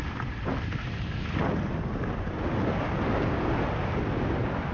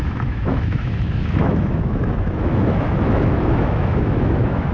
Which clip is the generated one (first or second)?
second